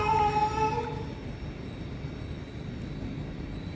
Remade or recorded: recorded